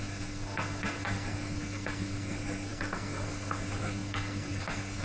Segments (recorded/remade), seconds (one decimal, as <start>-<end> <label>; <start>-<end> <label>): 0.0-5.0 remade